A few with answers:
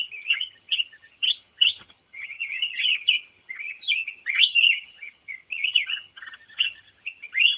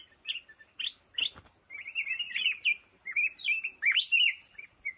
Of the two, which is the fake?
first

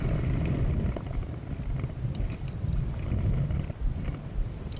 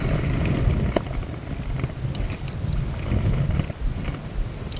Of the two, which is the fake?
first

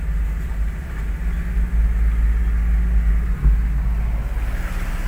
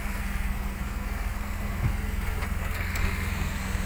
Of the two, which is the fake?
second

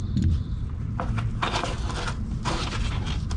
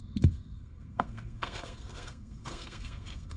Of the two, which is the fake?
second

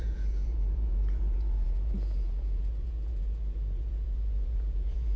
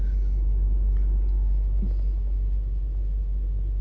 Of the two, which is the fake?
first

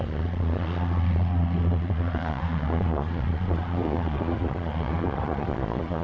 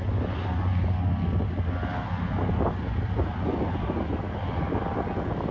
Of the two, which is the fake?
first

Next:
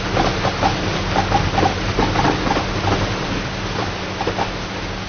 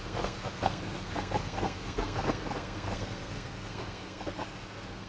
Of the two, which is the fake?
second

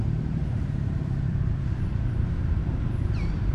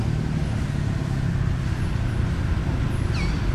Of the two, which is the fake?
first